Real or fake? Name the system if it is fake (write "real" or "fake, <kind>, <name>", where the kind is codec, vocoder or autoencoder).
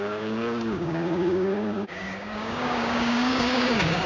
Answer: fake, codec, DAC